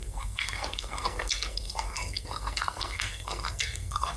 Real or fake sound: fake